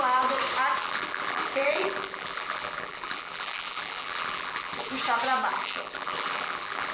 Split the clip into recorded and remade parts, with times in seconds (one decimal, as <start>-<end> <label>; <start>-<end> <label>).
0.0-0.8 recorded; 0.8-4.9 remade; 4.9-5.5 recorded; 5.5-6.9 remade